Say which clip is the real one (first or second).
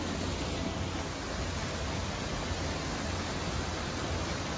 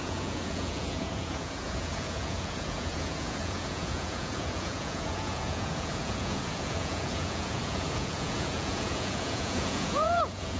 first